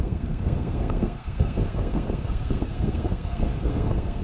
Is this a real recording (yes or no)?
no